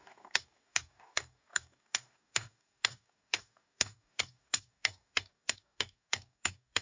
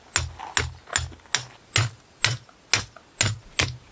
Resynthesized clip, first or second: first